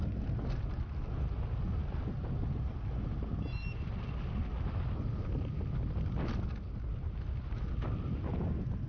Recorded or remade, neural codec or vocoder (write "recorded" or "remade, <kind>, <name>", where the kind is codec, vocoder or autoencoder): recorded